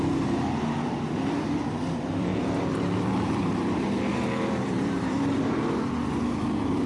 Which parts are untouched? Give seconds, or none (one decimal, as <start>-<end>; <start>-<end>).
none